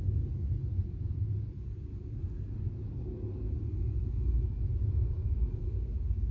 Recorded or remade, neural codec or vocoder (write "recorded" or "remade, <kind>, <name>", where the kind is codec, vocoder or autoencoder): recorded